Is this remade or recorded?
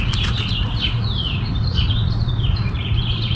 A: remade